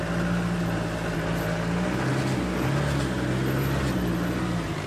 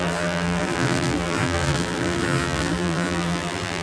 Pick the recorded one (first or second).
first